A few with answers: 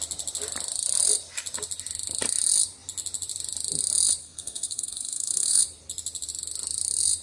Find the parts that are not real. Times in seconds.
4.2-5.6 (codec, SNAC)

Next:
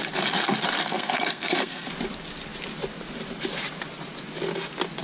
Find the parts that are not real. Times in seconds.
0.8-1.9 (codec, SNAC)

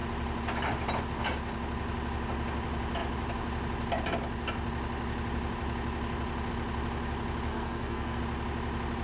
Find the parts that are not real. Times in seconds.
7.5-8.2 (codec, SNAC)

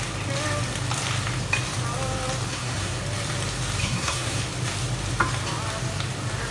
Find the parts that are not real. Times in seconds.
2.5-3.0 (codec, SNAC); 3.8-4.4

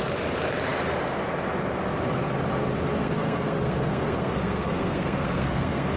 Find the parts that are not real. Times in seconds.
3.0-6.0 (codec, SNAC)

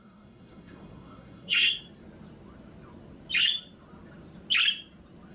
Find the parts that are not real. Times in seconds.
0.0-1.8 (codec, SNAC)

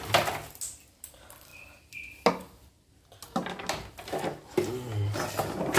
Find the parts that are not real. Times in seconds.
none

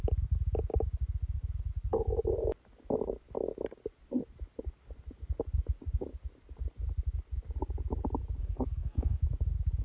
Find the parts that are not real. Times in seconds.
8.4-9.2 (codec, SNAC)